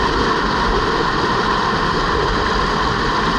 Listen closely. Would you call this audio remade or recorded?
recorded